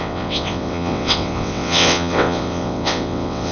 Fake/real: fake